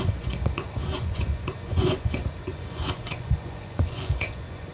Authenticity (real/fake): fake